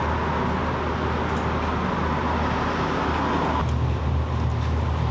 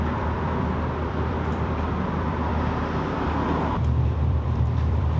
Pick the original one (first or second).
first